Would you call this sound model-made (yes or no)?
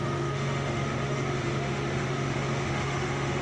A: yes